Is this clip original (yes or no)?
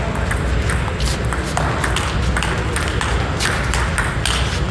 yes